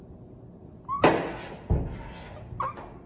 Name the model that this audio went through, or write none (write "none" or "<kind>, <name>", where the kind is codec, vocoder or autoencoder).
none